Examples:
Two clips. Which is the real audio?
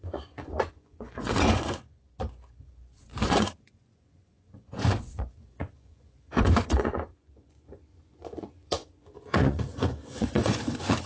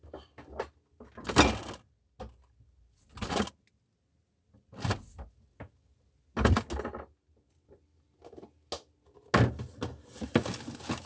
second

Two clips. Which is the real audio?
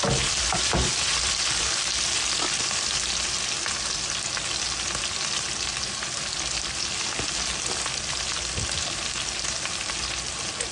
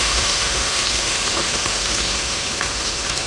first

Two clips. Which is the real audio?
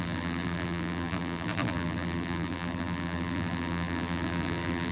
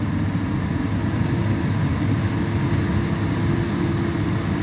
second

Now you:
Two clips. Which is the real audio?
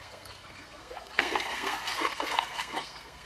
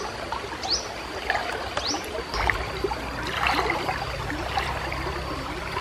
second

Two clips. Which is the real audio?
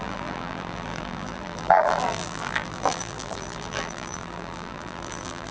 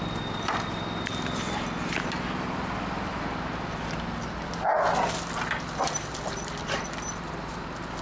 second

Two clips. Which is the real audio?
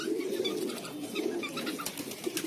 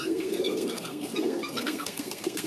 first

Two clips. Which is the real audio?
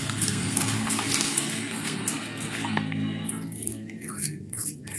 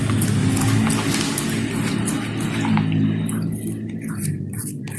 second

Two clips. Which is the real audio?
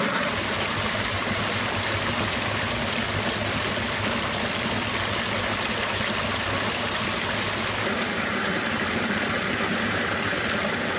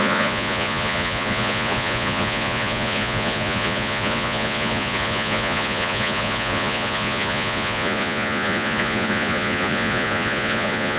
first